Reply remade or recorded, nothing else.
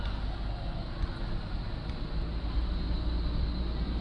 recorded